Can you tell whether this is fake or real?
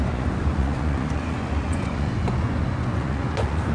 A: fake